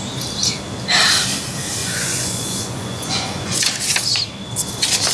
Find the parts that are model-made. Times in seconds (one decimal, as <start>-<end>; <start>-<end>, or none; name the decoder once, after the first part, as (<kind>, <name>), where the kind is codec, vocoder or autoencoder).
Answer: 1.8-3.7 (vocoder, Vocos)